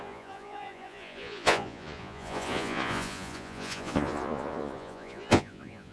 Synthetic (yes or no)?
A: yes